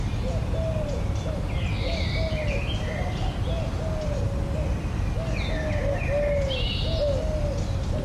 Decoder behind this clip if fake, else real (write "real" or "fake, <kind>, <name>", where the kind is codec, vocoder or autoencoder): real